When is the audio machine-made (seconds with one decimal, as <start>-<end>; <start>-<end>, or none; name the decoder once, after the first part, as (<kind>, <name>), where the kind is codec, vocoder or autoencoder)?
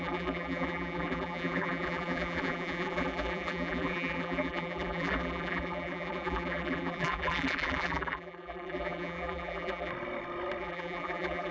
0.0-9.9 (vocoder, BigVGAN v2); 10.6-11.5